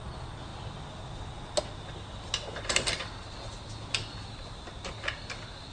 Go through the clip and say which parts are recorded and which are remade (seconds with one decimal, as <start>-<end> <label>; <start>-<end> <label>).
0.0-5.7 recorded